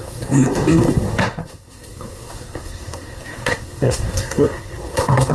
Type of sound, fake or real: fake